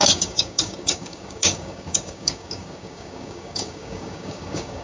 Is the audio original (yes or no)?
no